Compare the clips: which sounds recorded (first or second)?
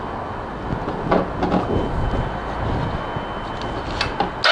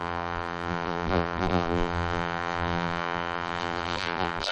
first